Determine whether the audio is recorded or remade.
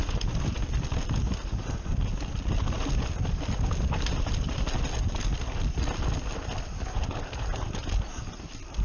recorded